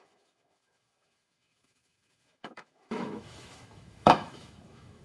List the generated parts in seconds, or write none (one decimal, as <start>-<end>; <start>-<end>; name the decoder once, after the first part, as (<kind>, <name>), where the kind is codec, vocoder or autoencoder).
0.0-5.0 (autoencoder, DAC-VAE)